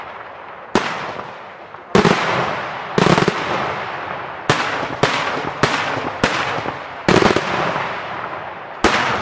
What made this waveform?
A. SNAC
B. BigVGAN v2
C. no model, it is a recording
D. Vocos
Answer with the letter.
C